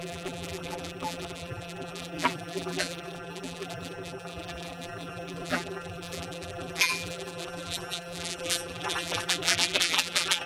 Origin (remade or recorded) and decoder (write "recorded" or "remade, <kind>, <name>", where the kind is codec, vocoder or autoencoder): remade, vocoder, BigVGAN v2